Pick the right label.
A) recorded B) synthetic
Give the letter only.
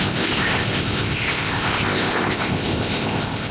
B